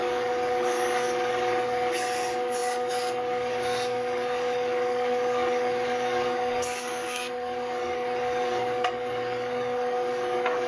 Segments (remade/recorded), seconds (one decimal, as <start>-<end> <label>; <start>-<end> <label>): 0.0-10.7 remade